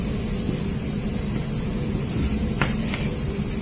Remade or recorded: recorded